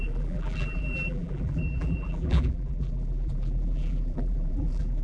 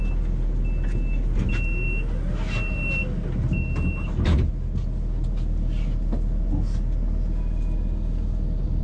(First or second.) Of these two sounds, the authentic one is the second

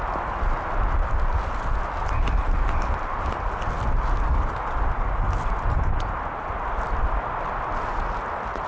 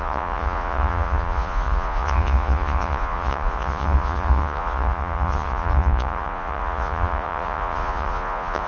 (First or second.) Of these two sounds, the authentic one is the first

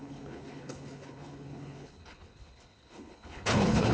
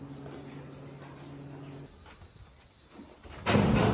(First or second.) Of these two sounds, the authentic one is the second